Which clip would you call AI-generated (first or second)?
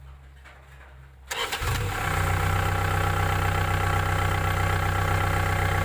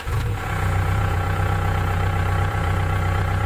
second